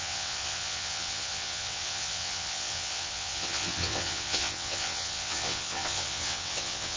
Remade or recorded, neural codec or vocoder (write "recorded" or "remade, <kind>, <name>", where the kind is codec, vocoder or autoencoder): remade, vocoder, WaveNeXt